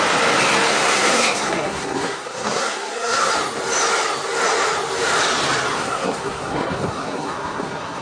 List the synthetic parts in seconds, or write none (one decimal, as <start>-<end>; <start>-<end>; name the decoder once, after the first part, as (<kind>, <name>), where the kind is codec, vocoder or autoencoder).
0.7-3.3 (codec, SNAC); 5.7-8.0